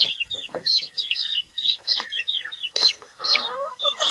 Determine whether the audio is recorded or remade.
remade